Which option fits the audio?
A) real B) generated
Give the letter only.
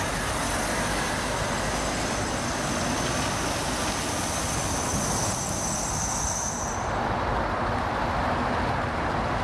A